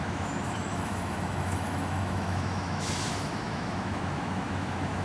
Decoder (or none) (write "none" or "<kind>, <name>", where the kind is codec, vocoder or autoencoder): autoencoder, DAC-VAE